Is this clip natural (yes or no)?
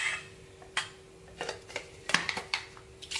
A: yes